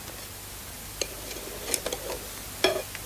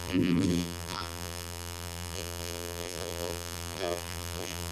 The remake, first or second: second